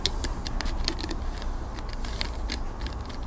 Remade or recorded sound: recorded